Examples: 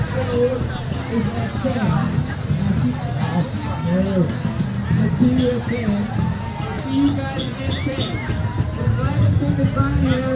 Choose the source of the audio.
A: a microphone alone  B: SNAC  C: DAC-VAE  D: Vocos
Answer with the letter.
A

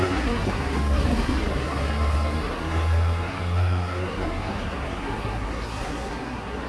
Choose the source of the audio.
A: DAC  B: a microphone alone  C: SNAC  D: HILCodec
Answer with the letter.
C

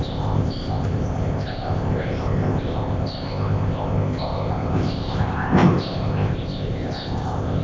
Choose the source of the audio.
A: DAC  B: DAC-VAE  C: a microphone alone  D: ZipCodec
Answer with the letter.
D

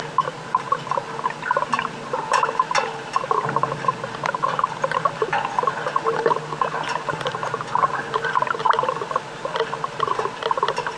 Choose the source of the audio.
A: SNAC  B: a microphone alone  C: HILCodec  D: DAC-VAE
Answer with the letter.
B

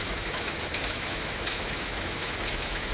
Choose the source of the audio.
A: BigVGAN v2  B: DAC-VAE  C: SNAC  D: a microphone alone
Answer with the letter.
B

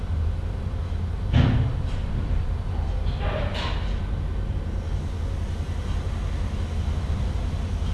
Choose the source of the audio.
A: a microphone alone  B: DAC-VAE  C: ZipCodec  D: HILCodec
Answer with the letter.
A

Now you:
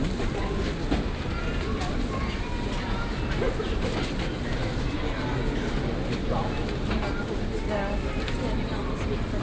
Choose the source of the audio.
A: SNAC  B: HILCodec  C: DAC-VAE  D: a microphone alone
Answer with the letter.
D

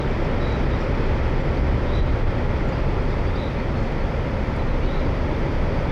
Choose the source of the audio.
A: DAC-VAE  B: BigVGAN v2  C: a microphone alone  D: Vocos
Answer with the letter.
C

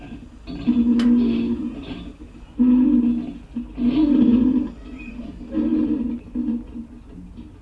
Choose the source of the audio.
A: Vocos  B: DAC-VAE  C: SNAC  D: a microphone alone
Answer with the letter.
D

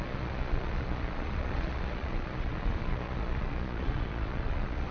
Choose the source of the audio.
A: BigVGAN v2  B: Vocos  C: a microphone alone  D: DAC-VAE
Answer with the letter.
B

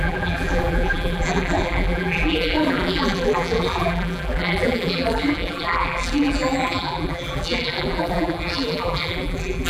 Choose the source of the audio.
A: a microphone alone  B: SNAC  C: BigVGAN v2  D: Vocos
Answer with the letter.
C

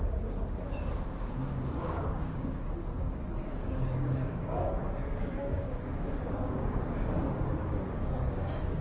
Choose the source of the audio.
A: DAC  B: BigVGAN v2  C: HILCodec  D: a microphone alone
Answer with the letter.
A